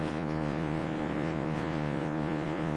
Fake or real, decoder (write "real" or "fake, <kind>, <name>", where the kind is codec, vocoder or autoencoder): fake, vocoder, Vocos